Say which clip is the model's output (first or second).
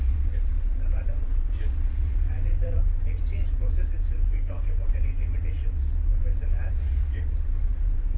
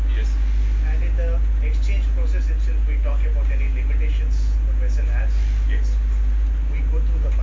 first